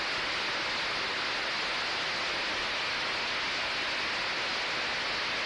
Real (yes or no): yes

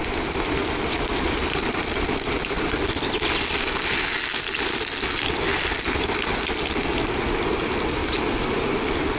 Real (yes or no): yes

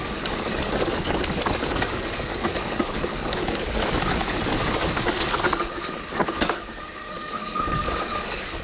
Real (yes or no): no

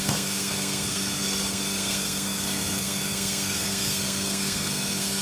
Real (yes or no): no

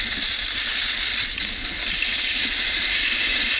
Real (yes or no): yes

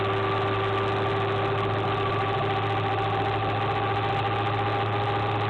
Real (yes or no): yes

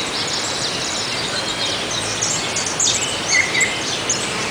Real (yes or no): yes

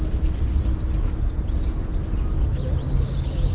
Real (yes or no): yes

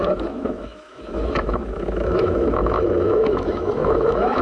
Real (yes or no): no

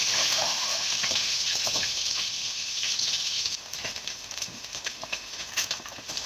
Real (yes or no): no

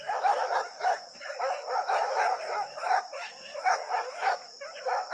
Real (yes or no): no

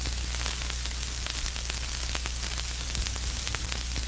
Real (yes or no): yes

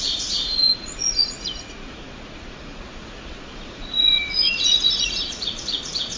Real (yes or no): no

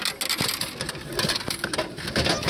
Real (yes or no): yes